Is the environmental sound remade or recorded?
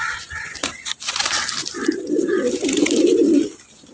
recorded